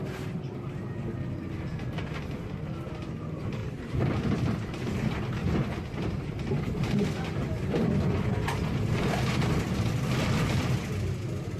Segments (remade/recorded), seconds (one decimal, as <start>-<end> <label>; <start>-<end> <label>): 0.0-3.6 recorded; 3.6-4.8 remade; 4.8-5.4 recorded; 5.4-8.1 remade; 8.1-11.6 recorded